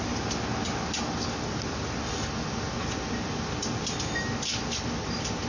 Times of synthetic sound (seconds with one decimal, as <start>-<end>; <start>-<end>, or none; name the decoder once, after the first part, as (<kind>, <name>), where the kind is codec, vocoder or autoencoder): none